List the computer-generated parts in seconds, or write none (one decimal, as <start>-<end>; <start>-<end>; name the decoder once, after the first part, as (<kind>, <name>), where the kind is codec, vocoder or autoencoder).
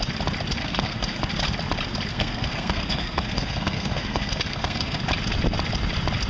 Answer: 0.6-1.2 (codec, SNAC); 2.1-5.0